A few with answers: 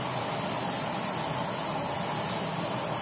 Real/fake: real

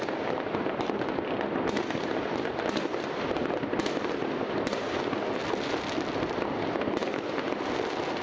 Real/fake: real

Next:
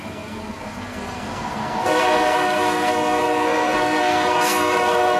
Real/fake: fake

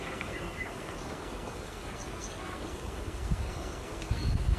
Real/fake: fake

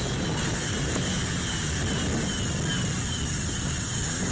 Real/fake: real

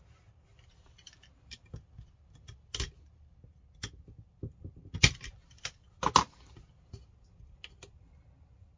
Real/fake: real